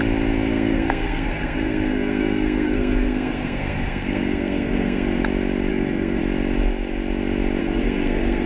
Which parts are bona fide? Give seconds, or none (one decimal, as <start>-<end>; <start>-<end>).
0.0-0.5; 5.2-5.7; 6.2-7.6